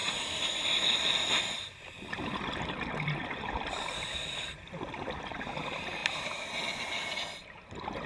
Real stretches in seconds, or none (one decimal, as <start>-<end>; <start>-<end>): 0.0-8.1